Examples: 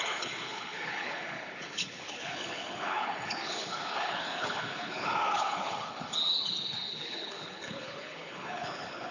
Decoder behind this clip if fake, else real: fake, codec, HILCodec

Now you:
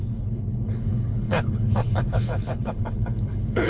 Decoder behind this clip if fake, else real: fake, codec, HILCodec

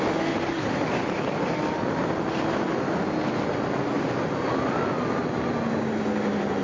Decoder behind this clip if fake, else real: real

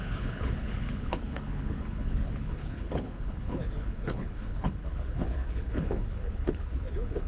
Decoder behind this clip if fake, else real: fake, codec, HILCodec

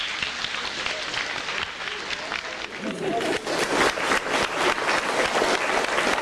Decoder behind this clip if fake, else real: real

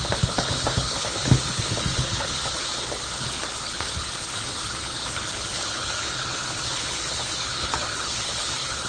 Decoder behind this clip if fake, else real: fake, codec, HILCodec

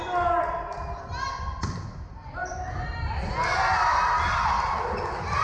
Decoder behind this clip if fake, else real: real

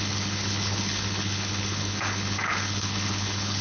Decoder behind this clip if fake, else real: fake, codec, HILCodec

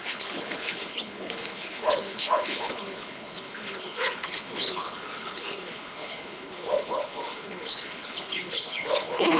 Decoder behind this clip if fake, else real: fake, codec, HILCodec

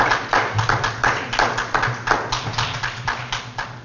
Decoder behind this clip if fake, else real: real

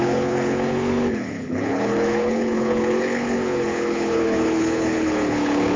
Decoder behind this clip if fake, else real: fake, codec, HILCodec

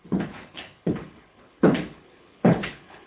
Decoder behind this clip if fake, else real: fake, codec, HILCodec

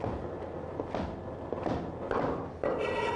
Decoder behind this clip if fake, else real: real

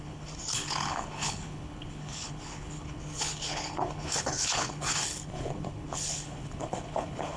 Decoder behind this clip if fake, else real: fake, codec, HILCodec